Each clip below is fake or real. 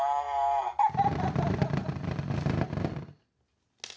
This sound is real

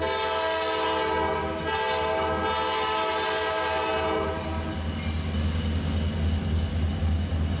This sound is real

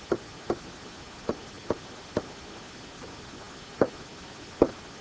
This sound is real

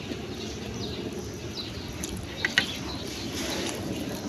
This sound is real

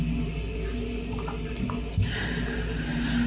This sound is real